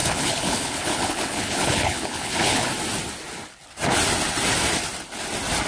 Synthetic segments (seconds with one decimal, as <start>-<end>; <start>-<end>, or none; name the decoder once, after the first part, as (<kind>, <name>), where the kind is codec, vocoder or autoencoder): 0.0-2.7 (codec, HILCodec)